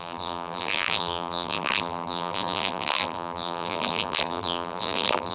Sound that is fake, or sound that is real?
fake